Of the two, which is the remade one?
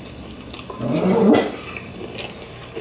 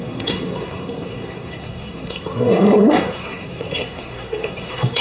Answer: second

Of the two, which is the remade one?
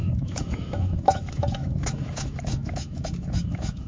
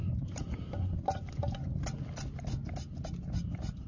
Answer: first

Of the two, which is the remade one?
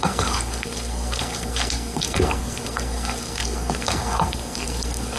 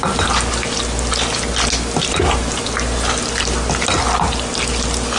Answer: first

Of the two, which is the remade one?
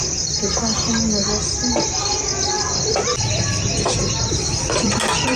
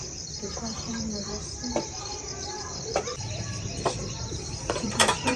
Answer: second